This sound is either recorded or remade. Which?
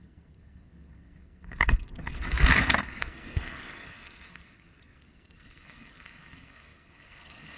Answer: remade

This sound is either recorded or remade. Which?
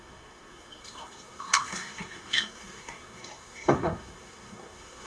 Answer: remade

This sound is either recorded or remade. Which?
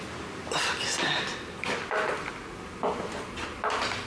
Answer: recorded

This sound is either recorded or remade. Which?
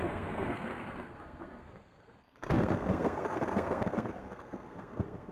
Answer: remade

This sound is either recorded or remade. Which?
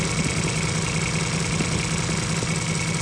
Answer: recorded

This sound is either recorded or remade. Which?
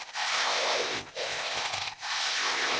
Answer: remade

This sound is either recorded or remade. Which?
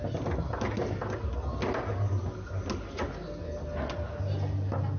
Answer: recorded